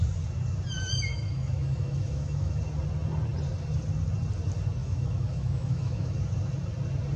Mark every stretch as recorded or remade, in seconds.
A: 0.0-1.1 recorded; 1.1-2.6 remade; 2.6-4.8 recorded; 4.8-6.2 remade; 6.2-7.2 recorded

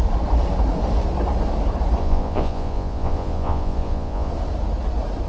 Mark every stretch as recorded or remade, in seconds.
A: 0.0-2.0 recorded; 2.0-4.3 remade; 4.3-5.3 recorded

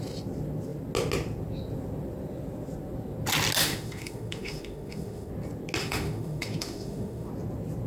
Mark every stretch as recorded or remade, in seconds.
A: 0.0-3.6 recorded; 3.6-5.3 remade; 5.3-5.8 recorded; 5.8-7.3 remade; 7.3-7.9 recorded